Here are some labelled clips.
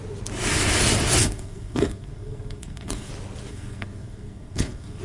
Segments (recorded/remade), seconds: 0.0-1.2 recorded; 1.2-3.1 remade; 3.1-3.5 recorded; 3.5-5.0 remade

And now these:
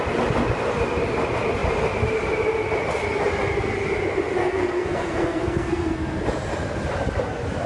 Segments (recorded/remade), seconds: 0.0-4.4 recorded; 4.4-6.2 remade; 6.2-7.7 recorded